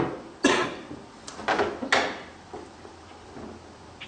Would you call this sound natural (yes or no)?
yes